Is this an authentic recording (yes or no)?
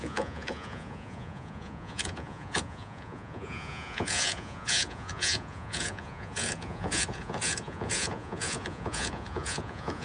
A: no